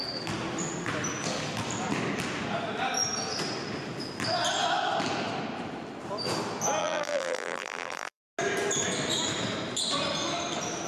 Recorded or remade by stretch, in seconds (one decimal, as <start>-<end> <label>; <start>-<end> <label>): 0.0-6.8 recorded; 6.8-8.2 remade; 8.2-10.9 recorded